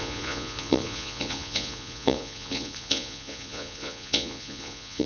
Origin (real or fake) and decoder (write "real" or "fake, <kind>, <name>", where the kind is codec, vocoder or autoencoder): fake, vocoder, Vocos